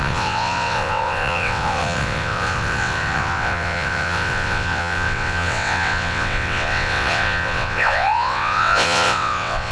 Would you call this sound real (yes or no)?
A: no